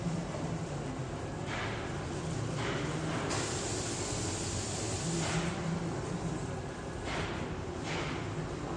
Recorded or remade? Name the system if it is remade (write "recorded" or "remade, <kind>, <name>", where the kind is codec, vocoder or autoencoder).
recorded